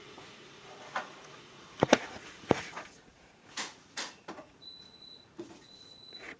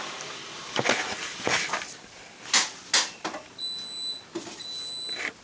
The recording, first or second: second